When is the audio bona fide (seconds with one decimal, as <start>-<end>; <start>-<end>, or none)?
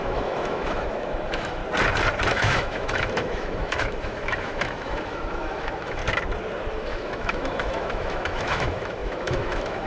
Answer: 1.6-2.3; 6.0-6.7